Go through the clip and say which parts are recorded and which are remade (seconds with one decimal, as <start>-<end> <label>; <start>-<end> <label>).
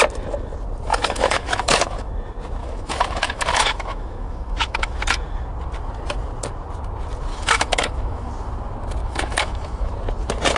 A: 0.0-0.9 recorded; 0.9-2.1 remade; 2.1-2.6 recorded; 2.6-5.0 remade; 5.0-7.3 recorded; 7.3-8.3 remade; 8.3-9.0 recorded; 9.0-9.9 remade; 9.9-10.6 recorded